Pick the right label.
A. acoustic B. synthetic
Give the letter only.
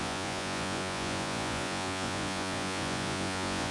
B